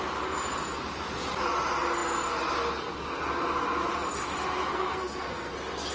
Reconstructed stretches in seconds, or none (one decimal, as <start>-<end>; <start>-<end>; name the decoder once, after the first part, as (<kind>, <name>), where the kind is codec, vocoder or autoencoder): 4.7-5.5 (codec, SNAC)